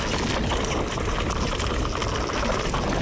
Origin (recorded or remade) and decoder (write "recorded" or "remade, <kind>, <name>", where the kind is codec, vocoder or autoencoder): recorded